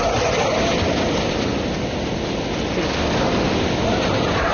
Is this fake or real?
real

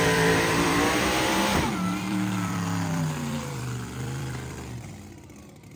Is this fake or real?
fake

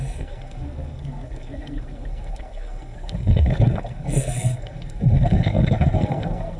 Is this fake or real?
fake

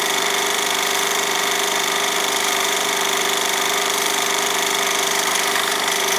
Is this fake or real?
fake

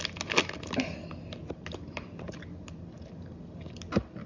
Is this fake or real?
real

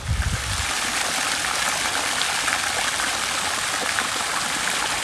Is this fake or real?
real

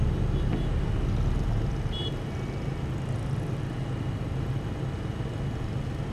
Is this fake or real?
real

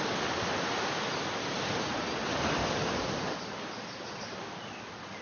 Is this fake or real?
real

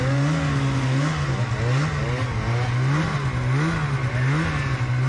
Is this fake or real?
real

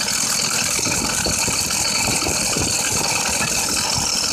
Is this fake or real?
real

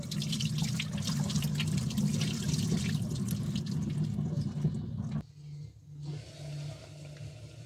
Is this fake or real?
real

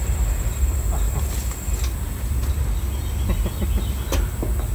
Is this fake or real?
real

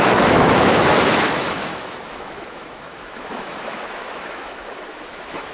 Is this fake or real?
fake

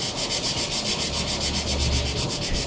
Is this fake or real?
real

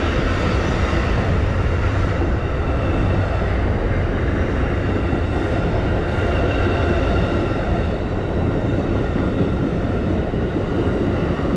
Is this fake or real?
real